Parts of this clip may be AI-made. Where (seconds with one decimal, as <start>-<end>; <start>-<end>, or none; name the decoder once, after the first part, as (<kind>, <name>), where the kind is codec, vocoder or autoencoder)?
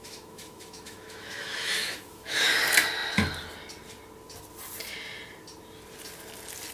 0.0-2.5 (autoencoder, DAC-VAE)